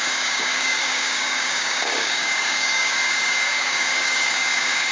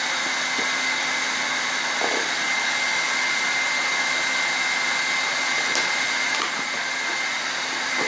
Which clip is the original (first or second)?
second